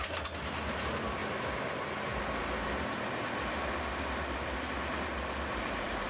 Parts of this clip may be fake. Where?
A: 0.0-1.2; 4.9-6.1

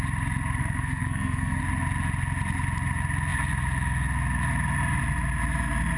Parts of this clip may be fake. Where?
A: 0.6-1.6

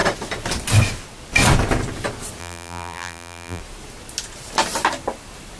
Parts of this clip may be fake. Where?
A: 2.4-3.6